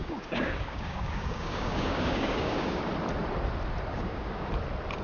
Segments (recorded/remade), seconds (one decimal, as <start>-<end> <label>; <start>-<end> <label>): 0.0-2.8 remade; 2.8-3.9 recorded; 3.9-4.5 remade; 4.5-5.0 recorded